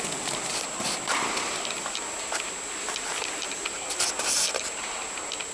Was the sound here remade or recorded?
recorded